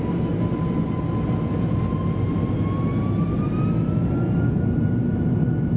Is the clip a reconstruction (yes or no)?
no